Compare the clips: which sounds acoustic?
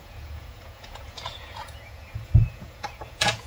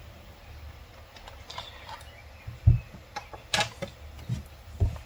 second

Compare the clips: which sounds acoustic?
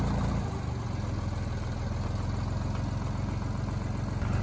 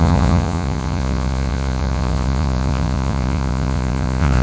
first